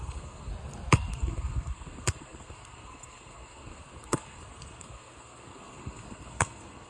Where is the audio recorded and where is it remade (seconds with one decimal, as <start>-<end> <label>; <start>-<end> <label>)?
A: 0.0-0.5 remade; 0.5-1.1 recorded; 1.1-6.9 remade